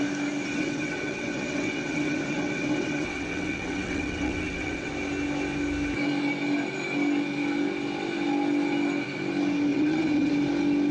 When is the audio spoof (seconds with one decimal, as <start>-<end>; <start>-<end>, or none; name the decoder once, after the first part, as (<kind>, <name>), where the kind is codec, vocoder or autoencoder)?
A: 0.5-4.9 (vocoder, WaveNeXt); 9.7-10.3